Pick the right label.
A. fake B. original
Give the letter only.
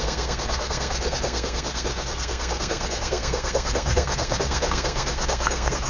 A